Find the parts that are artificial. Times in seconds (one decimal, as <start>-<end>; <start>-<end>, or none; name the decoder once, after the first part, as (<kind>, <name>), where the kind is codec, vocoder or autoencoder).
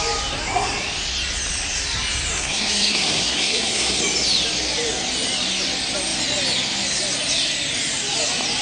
2.3-4.0 (codec, SNAC)